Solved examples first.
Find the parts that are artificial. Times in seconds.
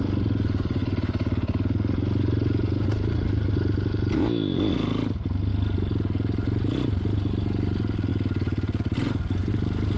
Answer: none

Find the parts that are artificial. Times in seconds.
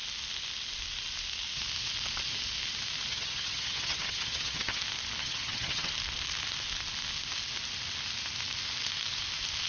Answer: 3.1-4.8 (vocoder, HiFi-GAN); 5.2-5.9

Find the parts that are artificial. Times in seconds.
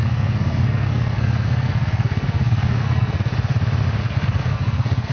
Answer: 0.0-3.3 (codec, SNAC); 4.0-5.1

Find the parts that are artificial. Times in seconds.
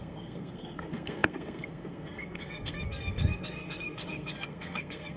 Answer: 0.0-5.2 (codec, SNAC)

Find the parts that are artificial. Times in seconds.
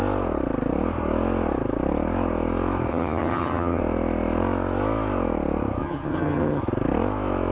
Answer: 2.9-3.8 (vocoder, HiFi-GAN); 5.8-6.6